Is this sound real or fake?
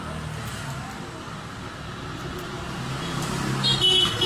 real